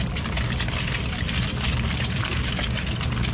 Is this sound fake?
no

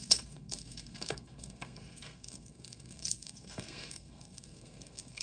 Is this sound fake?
yes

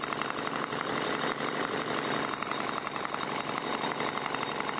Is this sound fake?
no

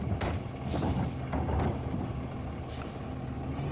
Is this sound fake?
no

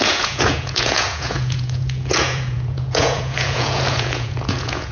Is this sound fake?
yes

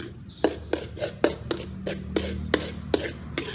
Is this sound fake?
no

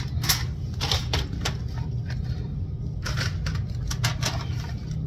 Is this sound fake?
no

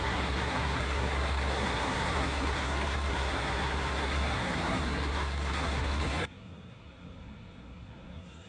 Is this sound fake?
yes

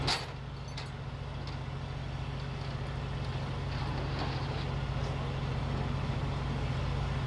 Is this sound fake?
no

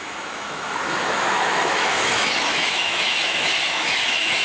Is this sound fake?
yes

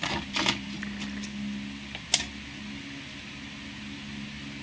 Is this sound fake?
no